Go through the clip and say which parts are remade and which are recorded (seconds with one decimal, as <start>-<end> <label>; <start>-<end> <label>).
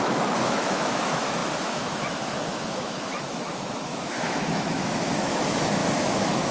0.0-6.5 remade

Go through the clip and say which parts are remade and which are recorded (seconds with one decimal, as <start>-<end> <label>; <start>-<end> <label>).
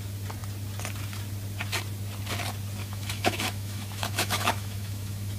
0.0-2.8 recorded; 2.8-5.4 remade